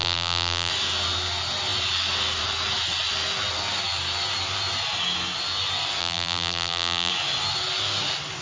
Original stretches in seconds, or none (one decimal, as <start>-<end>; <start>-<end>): 0.7-6.0; 7.1-8.4